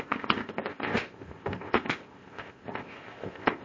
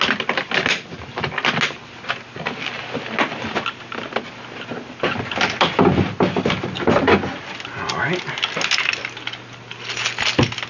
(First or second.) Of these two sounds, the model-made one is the first